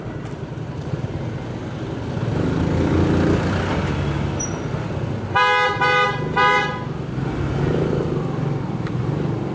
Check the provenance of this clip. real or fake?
real